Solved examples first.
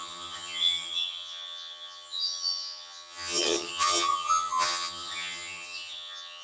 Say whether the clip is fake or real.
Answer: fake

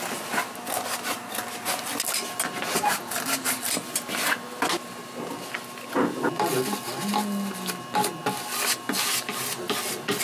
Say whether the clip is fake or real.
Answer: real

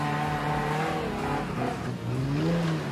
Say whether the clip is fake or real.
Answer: real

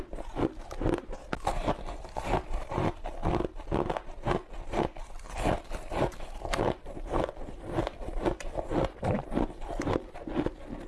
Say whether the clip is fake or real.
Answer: real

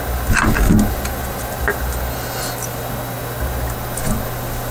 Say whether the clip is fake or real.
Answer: real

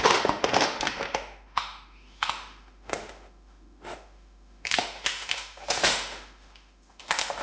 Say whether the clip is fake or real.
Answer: fake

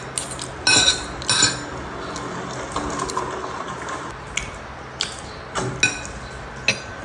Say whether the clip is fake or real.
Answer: real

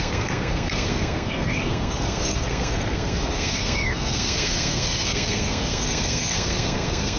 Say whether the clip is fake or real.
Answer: fake